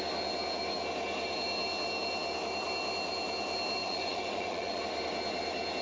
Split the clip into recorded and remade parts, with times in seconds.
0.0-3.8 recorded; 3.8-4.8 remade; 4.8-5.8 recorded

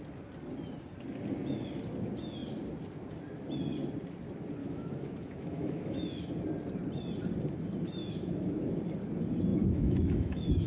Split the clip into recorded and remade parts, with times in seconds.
0.0-4.6 recorded; 4.6-6.3 remade; 6.3-8.0 recorded; 8.0-8.8 remade; 8.8-9.5 recorded; 9.5-10.7 remade

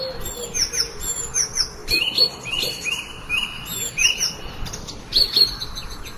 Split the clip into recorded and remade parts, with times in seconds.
0.0-1.8 recorded; 1.8-5.5 remade; 5.5-6.2 recorded

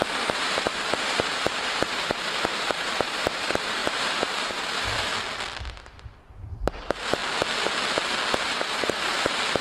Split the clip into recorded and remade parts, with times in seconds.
0.0-5.1 remade; 5.1-6.3 recorded; 6.3-7.2 remade; 7.2-8.4 recorded; 8.4-9.6 remade